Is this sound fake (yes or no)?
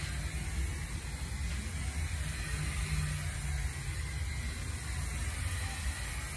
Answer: no